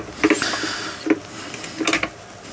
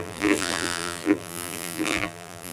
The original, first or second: first